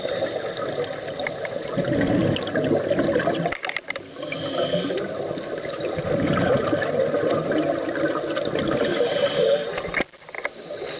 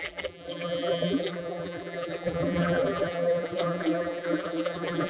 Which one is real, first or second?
first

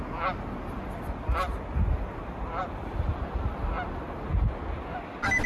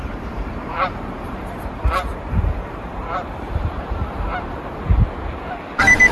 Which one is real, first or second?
first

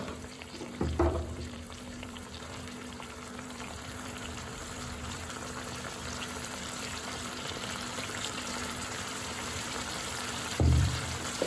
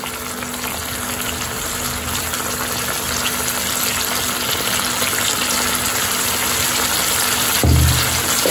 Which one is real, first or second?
second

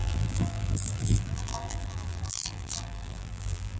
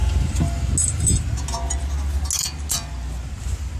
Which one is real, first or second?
second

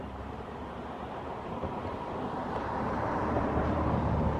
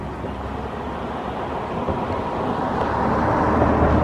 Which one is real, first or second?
second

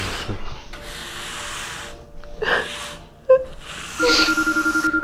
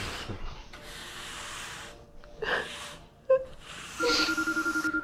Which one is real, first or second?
first